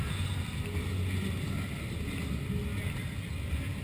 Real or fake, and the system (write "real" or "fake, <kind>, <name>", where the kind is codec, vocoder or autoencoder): real